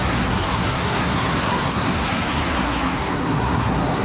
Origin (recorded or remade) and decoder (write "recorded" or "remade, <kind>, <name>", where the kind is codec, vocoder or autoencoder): remade, codec, SNAC